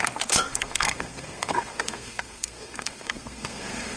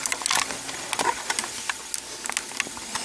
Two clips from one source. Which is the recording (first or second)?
second